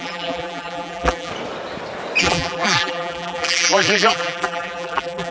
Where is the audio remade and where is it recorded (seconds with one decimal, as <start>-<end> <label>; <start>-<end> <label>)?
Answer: 0.0-1.3 remade; 1.3-2.2 recorded; 2.2-5.3 remade